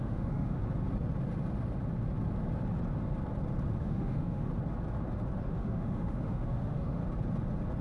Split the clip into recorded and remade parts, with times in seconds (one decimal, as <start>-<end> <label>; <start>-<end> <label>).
0.0-0.6 remade; 0.6-3.8 recorded; 3.8-4.5 remade; 4.5-5.4 recorded; 5.4-7.0 remade; 7.0-7.8 recorded